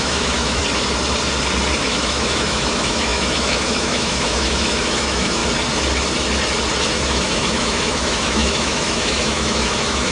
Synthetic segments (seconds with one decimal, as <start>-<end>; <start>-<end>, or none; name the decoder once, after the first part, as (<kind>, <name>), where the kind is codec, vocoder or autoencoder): 0.0-0.6 (autoencoder, DAC-VAE); 1.8-5.4; 6.9-10.1